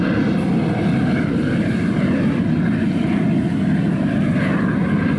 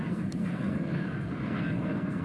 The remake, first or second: second